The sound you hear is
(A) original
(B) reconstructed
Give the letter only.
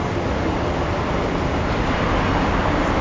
A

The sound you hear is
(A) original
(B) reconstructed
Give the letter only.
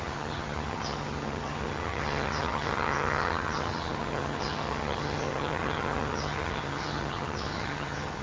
B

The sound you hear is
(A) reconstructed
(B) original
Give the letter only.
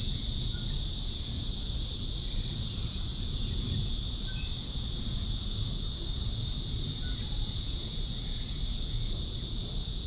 A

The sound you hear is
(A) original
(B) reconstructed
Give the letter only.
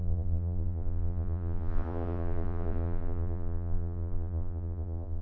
B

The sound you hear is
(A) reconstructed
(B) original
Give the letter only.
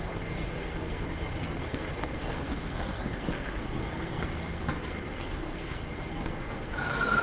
A